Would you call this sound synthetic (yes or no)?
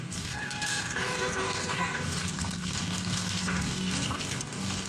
yes